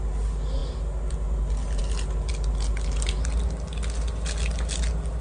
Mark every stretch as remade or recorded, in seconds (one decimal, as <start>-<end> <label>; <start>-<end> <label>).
0.0-5.2 recorded